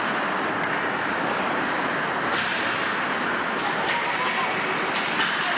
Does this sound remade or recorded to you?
recorded